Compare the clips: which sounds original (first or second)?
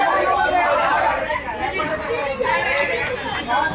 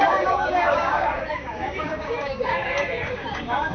first